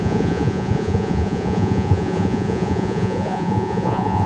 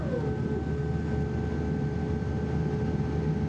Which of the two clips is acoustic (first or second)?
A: second